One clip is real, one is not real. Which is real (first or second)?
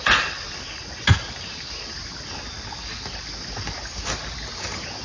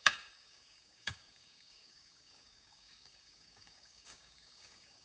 first